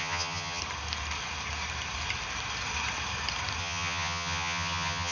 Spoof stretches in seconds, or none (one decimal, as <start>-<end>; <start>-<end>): 0.0-0.6; 3.6-5.1